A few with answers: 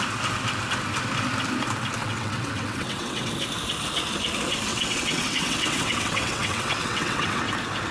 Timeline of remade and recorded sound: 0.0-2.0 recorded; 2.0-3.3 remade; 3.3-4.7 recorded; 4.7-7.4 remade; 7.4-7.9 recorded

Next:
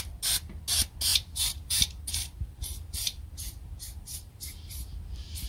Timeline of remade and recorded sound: 0.0-1.1 recorded; 1.1-3.3 remade; 3.3-3.8 recorded; 3.8-4.9 remade; 4.9-5.5 recorded

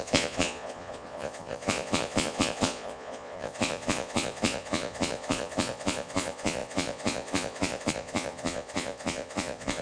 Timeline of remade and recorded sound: 0.0-9.8 remade